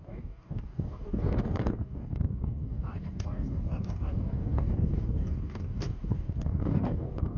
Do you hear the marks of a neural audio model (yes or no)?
yes